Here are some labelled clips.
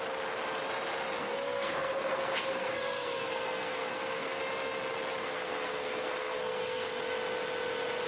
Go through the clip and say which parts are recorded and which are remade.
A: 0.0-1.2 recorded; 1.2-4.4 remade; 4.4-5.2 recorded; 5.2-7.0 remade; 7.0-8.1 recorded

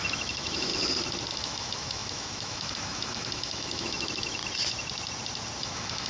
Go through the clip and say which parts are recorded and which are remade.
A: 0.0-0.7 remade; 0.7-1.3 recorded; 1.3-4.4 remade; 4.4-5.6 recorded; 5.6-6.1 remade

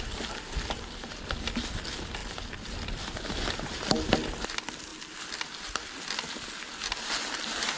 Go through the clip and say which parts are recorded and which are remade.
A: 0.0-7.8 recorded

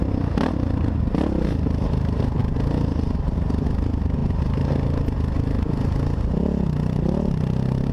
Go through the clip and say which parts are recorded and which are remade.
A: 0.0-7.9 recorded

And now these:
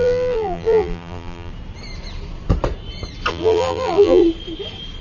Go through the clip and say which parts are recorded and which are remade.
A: 0.0-1.5 remade; 1.5-3.3 recorded; 3.3-4.2 remade; 4.2-5.0 recorded

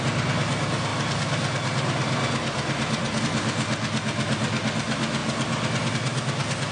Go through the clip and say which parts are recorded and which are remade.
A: 0.0-6.7 recorded

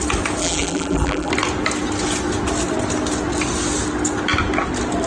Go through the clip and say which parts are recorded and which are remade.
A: 0.0-0.4 recorded; 0.4-1.3 remade; 1.3-5.1 recorded

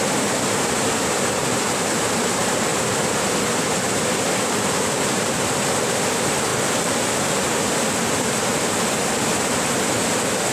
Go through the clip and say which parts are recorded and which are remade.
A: 0.0-2.7 remade; 2.7-5.0 recorded; 5.0-6.5 remade; 6.5-9.1 recorded; 9.1-10.5 remade